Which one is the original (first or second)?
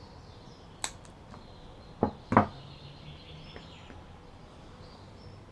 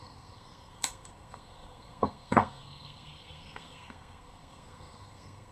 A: first